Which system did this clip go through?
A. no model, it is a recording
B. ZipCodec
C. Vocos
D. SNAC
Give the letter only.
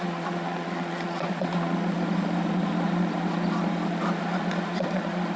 C